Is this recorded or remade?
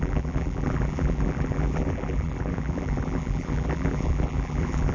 remade